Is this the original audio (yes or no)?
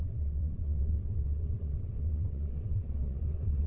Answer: no